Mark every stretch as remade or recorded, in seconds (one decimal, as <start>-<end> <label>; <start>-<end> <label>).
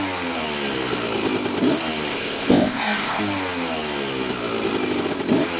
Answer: 0.0-2.1 recorded; 2.1-3.2 remade; 3.2-5.6 recorded